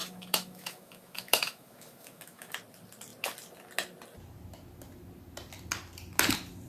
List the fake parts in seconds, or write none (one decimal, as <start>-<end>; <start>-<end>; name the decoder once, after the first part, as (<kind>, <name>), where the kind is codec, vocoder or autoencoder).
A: 0.0-2.5 (autoencoder, DAC-VAE)